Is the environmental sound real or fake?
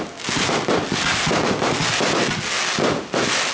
real